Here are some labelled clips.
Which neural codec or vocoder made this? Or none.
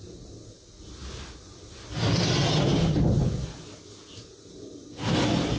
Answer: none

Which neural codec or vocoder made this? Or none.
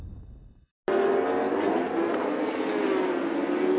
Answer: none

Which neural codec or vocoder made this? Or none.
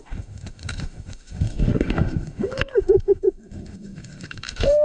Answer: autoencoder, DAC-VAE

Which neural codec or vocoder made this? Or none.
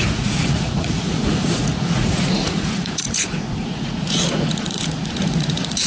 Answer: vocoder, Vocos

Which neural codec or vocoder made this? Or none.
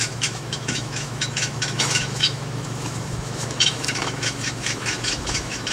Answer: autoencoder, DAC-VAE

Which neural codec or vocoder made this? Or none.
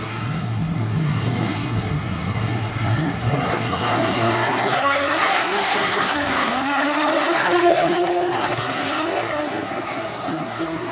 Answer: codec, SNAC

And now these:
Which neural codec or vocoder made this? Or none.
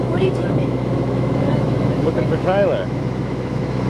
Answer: autoencoder, DAC-VAE